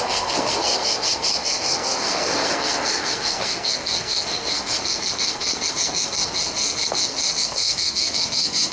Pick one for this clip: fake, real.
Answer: fake